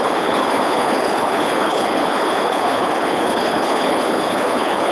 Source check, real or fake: fake